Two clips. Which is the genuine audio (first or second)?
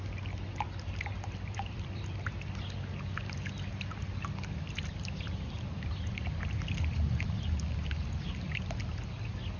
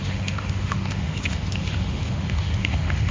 first